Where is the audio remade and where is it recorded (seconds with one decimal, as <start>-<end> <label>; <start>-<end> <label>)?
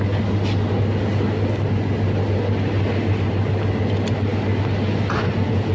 0.0-5.7 recorded